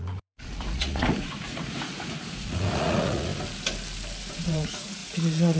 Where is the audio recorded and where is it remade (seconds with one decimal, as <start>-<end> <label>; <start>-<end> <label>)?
0.0-3.3 remade; 3.3-4.3 recorded; 4.3-5.6 remade